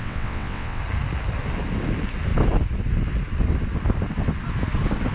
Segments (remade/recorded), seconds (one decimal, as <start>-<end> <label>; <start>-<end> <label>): 0.0-0.8 remade; 0.8-5.1 recorded